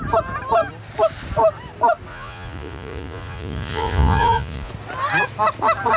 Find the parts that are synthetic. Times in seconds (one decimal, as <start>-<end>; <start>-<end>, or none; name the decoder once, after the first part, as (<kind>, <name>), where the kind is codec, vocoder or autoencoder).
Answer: 2.1-4.7 (vocoder, Vocos)